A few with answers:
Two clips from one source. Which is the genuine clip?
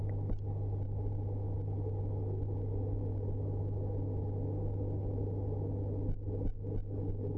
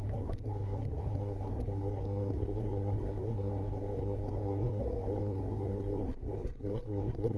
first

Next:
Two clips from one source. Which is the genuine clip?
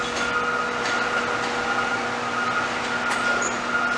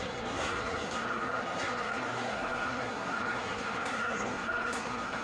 first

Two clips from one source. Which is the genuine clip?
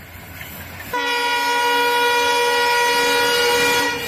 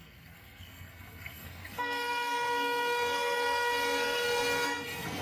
first